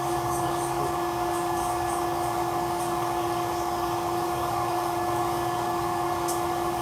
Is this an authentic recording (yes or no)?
no